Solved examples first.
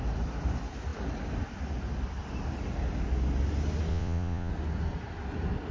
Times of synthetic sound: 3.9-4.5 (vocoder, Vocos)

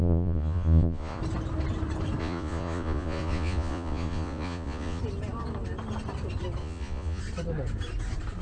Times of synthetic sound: 0.0-1.2 (vocoder, Vocos); 2.2-5.0; 6.6-7.2

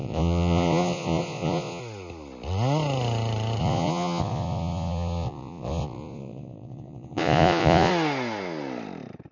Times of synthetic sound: 0.0-1.8 (vocoder, Vocos); 3.6-7.9

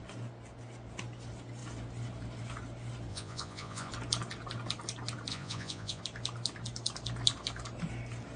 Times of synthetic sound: 3.1-3.9 (vocoder, Vocos); 5.3-6.0

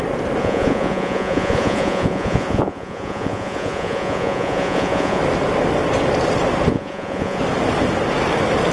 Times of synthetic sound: 0.4-5.2 (vocoder, Vocos); 6.7-7.4

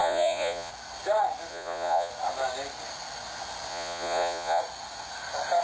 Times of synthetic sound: 0.0-0.7 (vocoder, Vocos); 1.5-2.1; 3.7-4.6

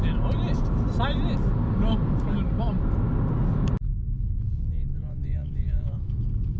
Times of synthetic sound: 4.7-6.1 (vocoder, Vocos)